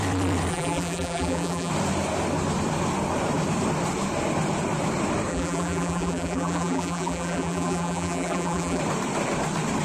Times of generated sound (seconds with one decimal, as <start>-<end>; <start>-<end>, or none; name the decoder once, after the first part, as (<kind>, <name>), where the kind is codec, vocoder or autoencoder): 0.5-1.7 (vocoder, BigVGAN v2); 5.3-8.8